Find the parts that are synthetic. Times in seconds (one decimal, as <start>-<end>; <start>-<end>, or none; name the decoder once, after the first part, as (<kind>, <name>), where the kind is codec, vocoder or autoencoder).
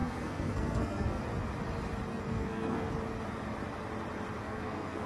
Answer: 0.0-1.2 (codec, SNAC); 2.1-2.9; 4.4-5.1